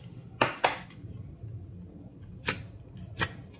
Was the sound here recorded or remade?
recorded